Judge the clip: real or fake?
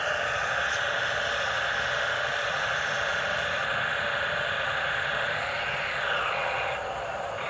real